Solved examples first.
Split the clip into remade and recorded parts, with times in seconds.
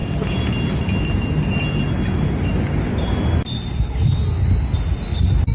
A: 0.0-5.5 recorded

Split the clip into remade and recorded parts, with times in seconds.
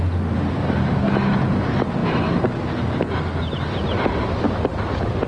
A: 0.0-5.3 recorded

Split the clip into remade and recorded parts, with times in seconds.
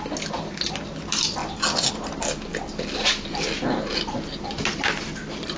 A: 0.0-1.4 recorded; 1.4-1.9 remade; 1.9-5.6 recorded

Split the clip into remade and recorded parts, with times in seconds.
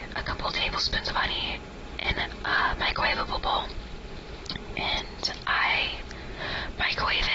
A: 0.0-0.5 recorded; 0.5-1.3 remade; 1.3-2.5 recorded; 2.5-6.4 remade; 6.4-7.3 recorded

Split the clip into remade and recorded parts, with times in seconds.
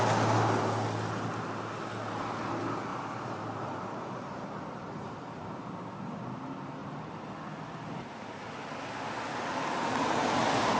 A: 0.0-2.9 recorded; 2.9-5.6 remade; 5.6-6.8 recorded; 6.8-7.3 remade; 7.3-10.8 recorded